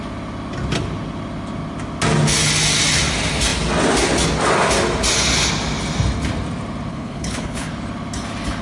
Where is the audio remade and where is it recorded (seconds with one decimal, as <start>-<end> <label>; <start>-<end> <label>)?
0.0-6.9 recorded; 6.9-7.7 remade; 7.7-8.6 recorded